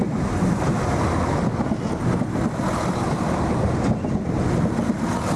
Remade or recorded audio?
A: recorded